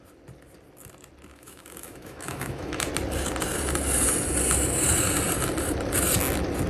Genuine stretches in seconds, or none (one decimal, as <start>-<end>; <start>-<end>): 0.0-1.3; 2.9-6.7